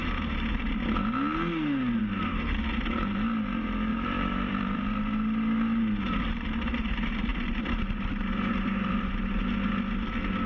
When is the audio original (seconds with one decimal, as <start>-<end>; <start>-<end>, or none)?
0.0-3.9; 4.9-7.3; 9.4-10.5